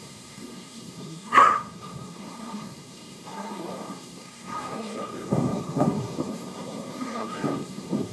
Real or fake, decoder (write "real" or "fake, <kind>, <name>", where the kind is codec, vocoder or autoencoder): fake, codec, SNAC